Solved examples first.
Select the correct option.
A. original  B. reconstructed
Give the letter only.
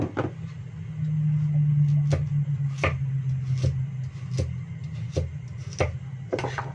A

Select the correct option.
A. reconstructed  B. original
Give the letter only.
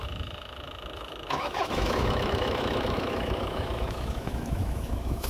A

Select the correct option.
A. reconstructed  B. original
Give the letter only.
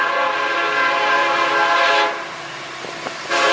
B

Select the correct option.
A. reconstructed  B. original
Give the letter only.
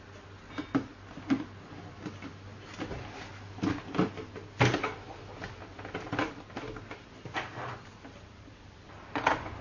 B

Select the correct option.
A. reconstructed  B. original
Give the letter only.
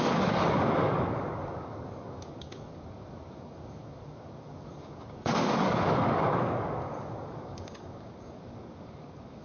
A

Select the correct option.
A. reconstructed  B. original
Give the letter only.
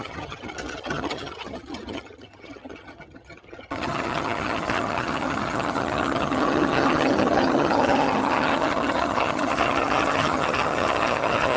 A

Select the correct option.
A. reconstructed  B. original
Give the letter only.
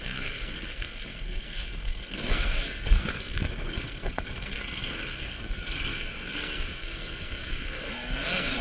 A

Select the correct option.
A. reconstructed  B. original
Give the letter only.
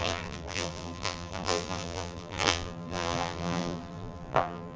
A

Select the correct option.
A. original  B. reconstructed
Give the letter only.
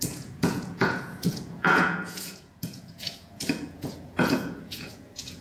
B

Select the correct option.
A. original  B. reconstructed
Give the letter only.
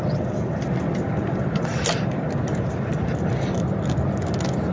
A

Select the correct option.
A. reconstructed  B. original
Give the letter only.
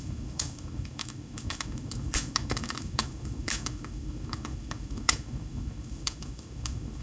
A